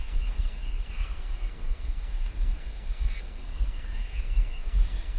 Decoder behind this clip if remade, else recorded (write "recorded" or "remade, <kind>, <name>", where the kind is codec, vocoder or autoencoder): remade, codec, SNAC